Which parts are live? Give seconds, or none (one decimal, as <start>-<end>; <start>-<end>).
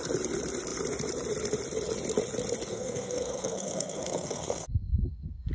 0.0-2.7